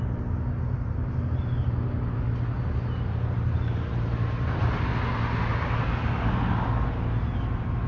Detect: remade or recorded recorded